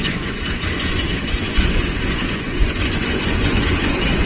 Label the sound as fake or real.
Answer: fake